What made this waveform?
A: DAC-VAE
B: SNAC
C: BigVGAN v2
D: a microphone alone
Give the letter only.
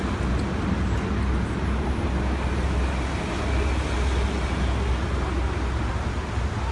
D